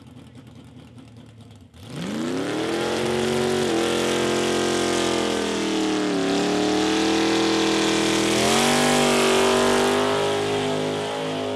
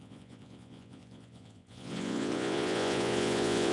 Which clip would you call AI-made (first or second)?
second